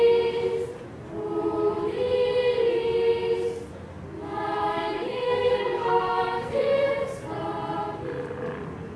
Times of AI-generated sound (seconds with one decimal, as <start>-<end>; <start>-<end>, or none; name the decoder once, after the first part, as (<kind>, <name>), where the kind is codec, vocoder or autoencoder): 4.7-6.9 (codec, SNAC)